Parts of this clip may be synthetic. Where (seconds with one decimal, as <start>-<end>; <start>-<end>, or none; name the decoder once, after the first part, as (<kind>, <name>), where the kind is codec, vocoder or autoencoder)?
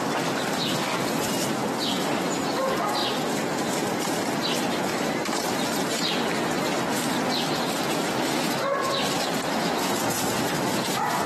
3.0-3.6 (vocoder, BigVGAN v2); 4.9-5.8; 8.8-10.0